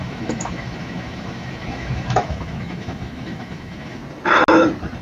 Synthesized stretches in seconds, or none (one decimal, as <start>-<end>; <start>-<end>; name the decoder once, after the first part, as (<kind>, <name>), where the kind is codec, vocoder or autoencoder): 0.0-4.0 (autoencoder, DAC-VAE)